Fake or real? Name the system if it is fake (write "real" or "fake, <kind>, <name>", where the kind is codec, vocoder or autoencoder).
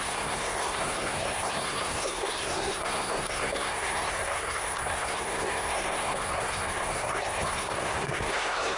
fake, codec, SNAC